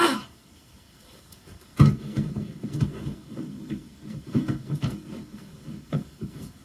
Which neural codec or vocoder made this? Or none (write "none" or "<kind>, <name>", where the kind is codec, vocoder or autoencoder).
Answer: codec, SNAC